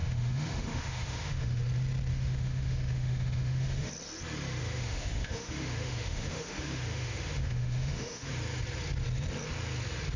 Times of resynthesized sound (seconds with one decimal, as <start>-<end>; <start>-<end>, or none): 0.0-1.6; 2.1-3.9; 4.6-8.3